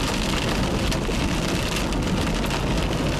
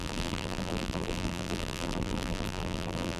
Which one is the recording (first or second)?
first